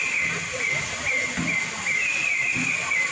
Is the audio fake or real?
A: real